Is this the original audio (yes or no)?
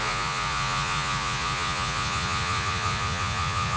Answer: no